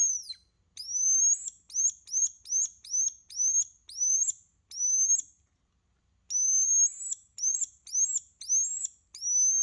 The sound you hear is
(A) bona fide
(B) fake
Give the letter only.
A